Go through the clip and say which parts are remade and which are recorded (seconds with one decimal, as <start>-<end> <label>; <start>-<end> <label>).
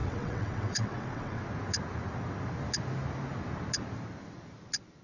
0.0-1.4 remade; 1.4-5.0 recorded